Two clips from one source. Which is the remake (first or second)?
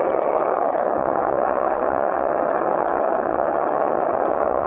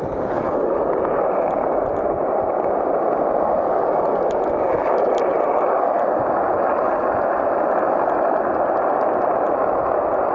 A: first